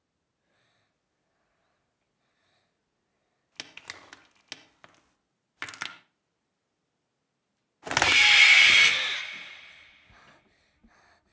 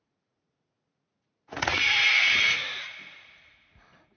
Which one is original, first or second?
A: first